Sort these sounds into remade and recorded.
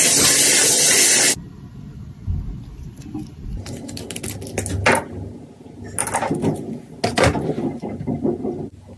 recorded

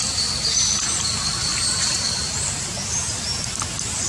recorded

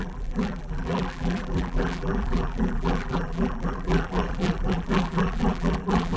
remade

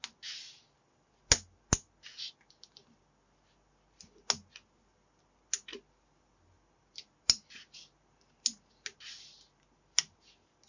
recorded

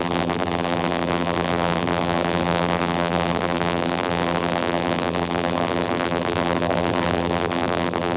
remade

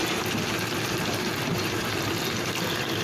remade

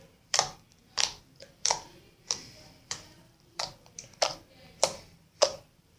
remade